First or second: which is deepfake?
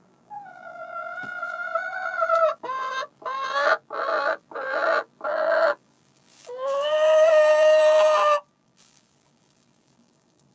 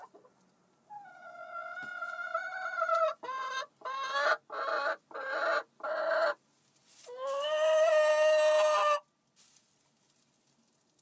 first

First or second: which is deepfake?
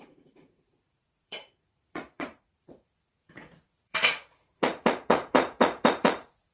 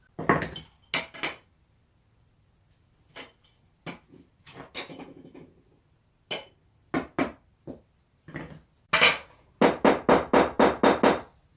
first